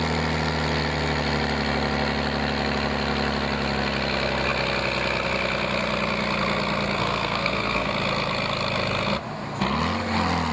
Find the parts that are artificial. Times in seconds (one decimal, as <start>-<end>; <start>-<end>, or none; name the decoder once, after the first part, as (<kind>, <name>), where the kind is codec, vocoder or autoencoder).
7.0-7.9 (codec, SNAC)